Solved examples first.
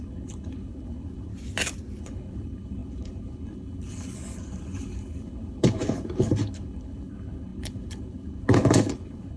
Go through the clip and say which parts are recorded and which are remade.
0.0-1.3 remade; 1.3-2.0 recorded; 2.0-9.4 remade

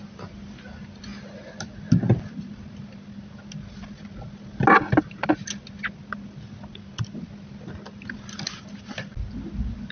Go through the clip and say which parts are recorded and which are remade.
0.0-9.9 recorded